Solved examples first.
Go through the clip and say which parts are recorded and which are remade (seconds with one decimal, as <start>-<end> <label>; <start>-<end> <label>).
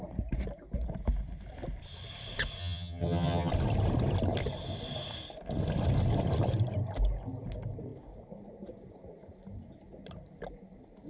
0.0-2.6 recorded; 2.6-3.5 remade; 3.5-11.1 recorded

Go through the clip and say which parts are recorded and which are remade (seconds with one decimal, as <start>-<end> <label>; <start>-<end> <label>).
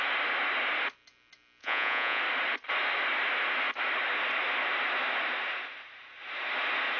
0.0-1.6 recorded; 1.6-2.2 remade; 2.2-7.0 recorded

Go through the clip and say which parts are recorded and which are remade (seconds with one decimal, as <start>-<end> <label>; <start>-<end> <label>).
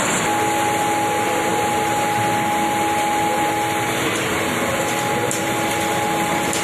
0.0-6.6 recorded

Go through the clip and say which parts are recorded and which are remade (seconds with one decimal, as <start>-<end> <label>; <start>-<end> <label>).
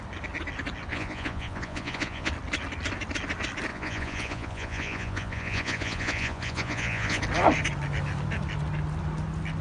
0.0-0.9 recorded; 0.9-2.3 remade; 2.3-3.7 recorded; 3.7-7.2 remade; 7.2-9.6 recorded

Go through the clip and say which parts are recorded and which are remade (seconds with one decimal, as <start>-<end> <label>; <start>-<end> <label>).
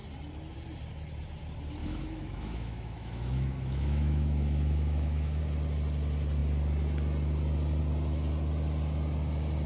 0.0-1.8 recorded; 1.8-5.4 remade; 5.4-9.7 recorded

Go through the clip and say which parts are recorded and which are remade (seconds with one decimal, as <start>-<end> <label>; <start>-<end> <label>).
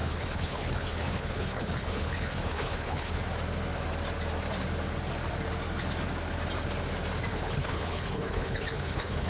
0.0-3.2 remade; 3.2-7.3 recorded; 7.3-9.3 remade